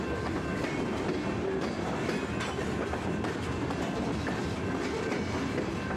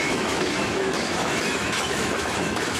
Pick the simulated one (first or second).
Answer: second